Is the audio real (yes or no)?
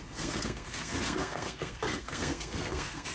no